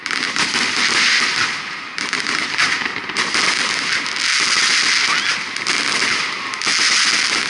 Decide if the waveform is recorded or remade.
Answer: recorded